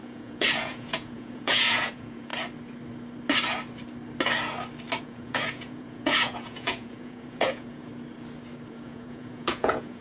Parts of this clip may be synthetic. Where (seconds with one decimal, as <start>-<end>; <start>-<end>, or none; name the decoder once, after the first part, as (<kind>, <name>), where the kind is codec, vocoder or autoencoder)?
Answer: 0.0-2.3 (vocoder, Vocos); 5.0-7.9; 8.7-10.0